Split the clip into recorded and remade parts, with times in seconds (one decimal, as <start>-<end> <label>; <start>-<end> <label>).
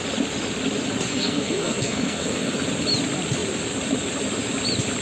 0.0-1.1 recorded; 1.1-2.5 remade; 2.5-5.0 recorded